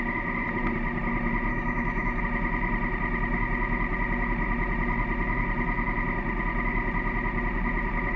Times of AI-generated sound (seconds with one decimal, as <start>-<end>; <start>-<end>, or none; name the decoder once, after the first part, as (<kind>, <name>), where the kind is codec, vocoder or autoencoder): 1.5-2.2 (autoencoder, DAC-VAE)